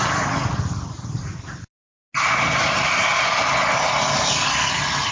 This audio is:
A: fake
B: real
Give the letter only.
B